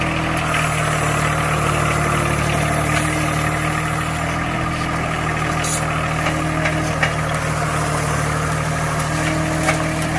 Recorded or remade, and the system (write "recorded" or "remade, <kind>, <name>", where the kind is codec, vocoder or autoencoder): recorded